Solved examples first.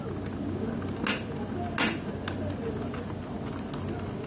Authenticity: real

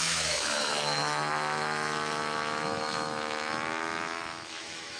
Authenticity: fake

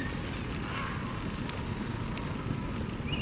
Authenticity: real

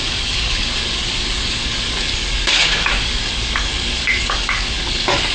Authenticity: fake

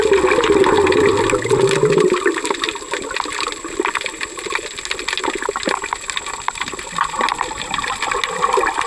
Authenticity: real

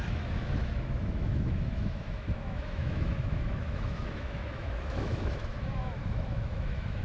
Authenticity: fake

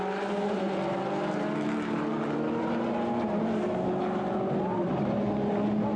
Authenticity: real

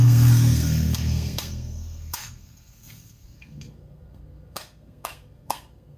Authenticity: fake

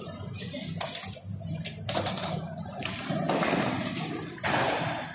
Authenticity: real